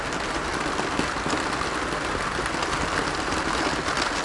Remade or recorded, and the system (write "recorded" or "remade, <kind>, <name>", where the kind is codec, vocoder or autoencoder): recorded